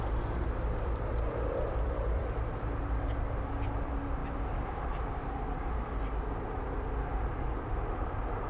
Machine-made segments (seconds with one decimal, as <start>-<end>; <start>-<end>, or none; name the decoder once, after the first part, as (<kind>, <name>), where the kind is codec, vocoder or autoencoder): 0.0-2.2 (vocoder, BigVGAN v2); 3.0-4.2; 8.0-8.5